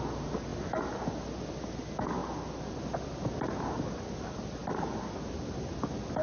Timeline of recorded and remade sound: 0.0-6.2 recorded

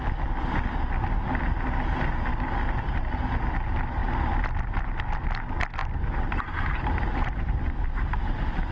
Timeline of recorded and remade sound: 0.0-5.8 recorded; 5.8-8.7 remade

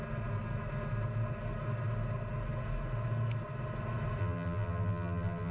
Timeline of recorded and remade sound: 0.0-4.2 recorded; 4.2-5.5 remade

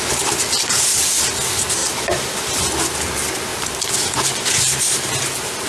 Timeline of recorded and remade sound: 0.0-1.8 recorded; 1.8-2.6 remade; 2.6-3.5 recorded; 3.5-4.5 remade; 4.5-5.7 recorded

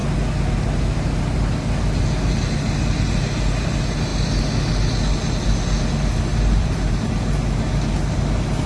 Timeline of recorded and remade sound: 0.0-6.3 recorded; 6.3-6.9 remade; 6.9-8.7 recorded

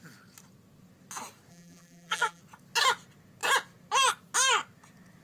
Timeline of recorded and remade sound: 0.0-1.5 recorded; 1.5-2.4 remade; 2.4-5.2 recorded